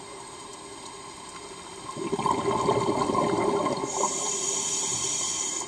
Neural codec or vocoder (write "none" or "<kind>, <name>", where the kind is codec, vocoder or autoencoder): none